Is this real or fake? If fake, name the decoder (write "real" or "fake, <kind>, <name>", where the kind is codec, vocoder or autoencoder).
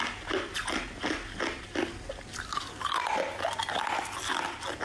real